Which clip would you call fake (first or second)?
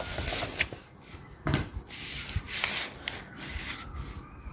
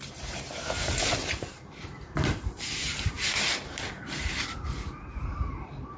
second